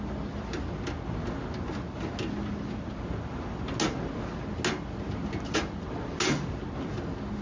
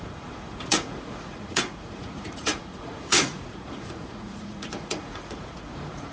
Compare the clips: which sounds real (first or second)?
first